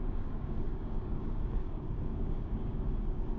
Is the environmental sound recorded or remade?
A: remade